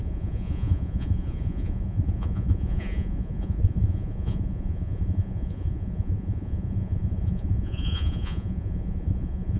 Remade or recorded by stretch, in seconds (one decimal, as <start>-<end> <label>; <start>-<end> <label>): 0.0-9.6 remade

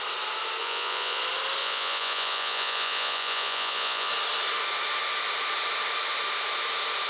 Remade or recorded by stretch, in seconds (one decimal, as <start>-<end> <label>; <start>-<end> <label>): 0.0-0.6 recorded; 0.6-1.2 remade; 1.2-1.6 recorded; 1.6-4.1 remade; 4.1-7.1 recorded

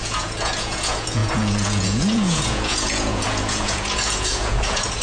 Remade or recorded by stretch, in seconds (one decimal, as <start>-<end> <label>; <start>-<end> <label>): 0.0-5.0 remade

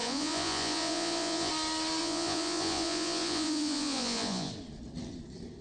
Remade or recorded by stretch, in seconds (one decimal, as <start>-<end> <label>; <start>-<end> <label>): 0.0-1.5 remade; 1.5-2.0 recorded; 2.0-4.5 remade; 4.5-5.6 recorded